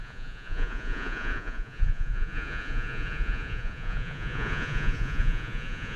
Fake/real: fake